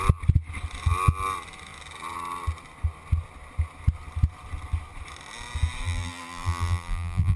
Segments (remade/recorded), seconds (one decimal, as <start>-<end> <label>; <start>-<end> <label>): 0.0-5.8 recorded; 5.8-7.4 remade